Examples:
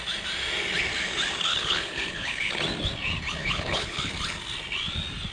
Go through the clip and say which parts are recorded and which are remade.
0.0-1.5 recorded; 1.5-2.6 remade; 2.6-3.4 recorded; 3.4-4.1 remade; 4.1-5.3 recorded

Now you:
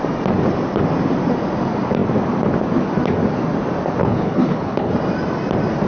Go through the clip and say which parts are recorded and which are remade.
0.0-4.0 recorded; 4.0-4.9 remade; 4.9-5.9 recorded

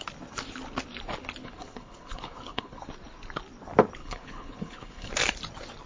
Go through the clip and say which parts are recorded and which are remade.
0.0-1.4 recorded; 1.4-2.8 remade; 2.8-4.0 recorded; 4.0-5.1 remade; 5.1-5.9 recorded

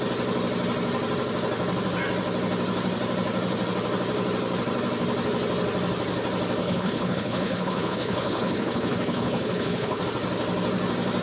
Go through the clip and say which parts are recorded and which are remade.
0.0-6.6 recorded; 6.6-10.0 remade; 10.0-11.2 recorded

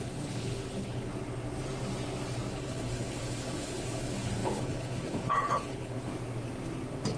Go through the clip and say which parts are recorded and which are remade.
0.0-1.1 remade; 1.1-2.5 recorded; 2.5-6.1 remade; 6.1-7.2 recorded

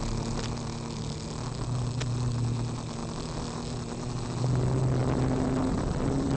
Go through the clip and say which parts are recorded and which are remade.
0.0-6.4 recorded